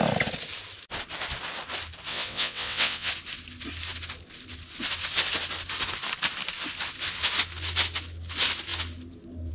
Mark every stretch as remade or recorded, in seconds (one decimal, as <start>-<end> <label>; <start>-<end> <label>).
0.0-2.1 recorded; 2.1-3.1 remade; 3.1-9.5 recorded